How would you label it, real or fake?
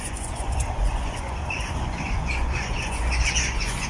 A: fake